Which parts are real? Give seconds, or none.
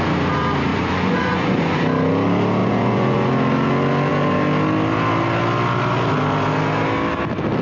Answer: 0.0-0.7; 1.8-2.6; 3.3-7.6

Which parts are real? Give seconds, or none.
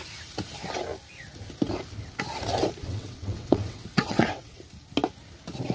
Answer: 0.0-2.8; 4.6-5.7